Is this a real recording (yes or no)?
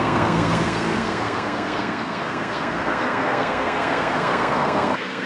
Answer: no